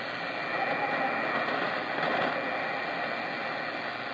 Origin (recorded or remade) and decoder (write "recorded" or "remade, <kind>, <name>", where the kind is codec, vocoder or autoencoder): recorded